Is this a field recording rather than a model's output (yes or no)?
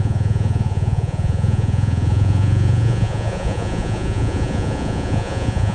no